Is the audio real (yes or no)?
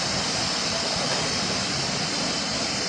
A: yes